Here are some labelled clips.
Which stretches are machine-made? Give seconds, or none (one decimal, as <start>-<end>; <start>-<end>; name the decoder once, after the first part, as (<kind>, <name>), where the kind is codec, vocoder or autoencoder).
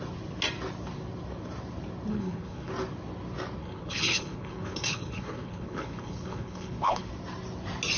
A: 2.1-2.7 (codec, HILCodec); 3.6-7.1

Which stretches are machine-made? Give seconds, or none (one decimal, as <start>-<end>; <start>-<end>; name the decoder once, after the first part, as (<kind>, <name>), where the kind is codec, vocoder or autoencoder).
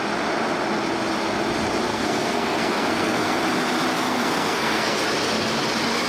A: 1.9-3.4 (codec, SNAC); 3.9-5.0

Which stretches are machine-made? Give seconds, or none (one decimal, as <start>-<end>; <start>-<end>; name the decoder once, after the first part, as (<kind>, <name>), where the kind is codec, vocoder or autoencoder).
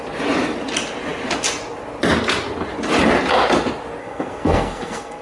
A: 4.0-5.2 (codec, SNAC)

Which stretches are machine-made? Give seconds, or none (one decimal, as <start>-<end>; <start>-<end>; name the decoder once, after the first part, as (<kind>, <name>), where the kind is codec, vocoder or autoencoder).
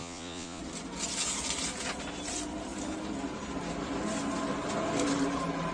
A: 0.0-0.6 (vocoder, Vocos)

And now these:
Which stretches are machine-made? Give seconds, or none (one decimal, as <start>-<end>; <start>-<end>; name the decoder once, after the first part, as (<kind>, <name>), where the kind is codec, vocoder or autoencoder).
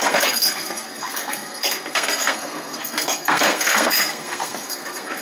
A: 0.0-5.2 (codec, SNAC)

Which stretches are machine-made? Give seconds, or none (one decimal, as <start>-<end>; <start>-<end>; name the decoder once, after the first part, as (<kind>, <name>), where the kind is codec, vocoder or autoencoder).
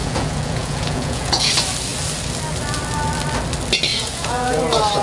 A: 0.0-1.5 (vocoder, Vocos); 3.9-4.6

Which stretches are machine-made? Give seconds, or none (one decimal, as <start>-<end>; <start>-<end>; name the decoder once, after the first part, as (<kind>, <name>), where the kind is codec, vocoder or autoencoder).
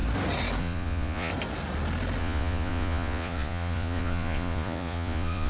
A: 0.6-1.3 (vocoder, Vocos); 2.2-5.5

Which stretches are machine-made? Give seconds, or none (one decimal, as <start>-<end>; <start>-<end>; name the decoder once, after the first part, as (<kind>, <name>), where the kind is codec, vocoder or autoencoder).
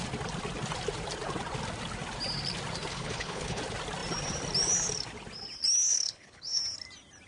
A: 2.9-3.6 (codec, HILCodec); 5.9-6.6